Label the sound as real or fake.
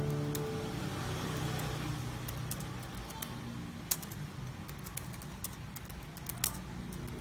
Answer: real